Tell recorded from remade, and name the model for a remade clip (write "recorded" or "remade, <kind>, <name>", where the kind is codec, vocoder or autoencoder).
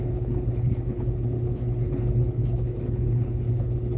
remade, codec, HILCodec